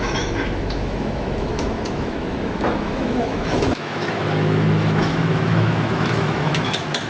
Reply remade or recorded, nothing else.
remade